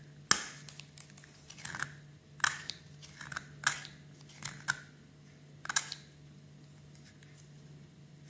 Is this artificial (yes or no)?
no